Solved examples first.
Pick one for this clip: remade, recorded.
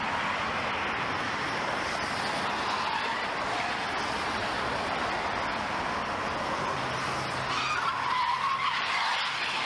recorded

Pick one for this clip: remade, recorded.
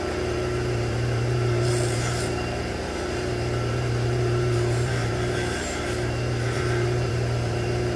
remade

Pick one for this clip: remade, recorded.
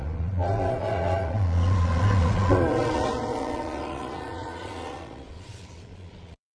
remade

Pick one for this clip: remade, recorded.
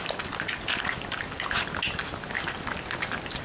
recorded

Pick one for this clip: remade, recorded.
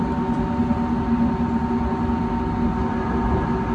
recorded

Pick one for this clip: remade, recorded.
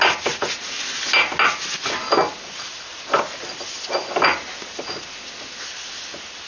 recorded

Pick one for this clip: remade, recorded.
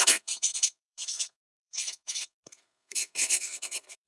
remade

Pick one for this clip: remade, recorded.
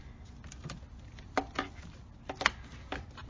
recorded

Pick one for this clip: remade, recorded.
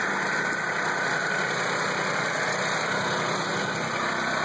recorded